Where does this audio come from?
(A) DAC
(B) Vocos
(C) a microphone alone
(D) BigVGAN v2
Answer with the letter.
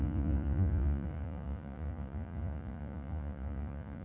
B